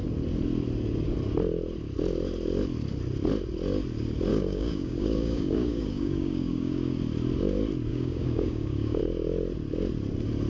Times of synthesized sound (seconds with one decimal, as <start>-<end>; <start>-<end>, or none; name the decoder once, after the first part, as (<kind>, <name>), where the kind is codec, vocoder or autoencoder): 4.3-7.0 (codec, DAC); 7.9-9.0